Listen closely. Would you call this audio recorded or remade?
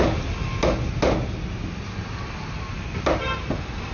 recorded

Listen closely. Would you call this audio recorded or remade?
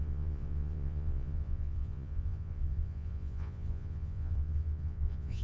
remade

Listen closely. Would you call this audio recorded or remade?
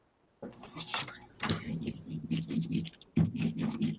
recorded